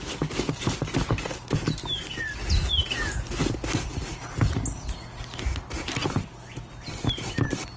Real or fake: real